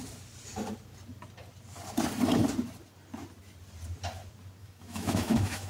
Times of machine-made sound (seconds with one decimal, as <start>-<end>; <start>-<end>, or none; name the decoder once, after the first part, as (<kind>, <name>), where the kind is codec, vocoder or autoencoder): 4.6-5.7 (autoencoder, DAC-VAE)